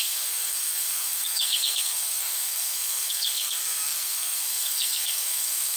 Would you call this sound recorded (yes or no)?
no